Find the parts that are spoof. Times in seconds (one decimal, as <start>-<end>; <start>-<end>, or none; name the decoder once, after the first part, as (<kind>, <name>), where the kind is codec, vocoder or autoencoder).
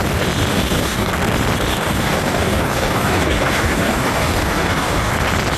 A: 0.5-1.1 (codec, DAC); 1.7-5.1